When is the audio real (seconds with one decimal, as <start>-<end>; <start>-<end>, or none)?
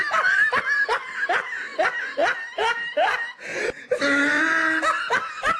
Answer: 0.0-5.6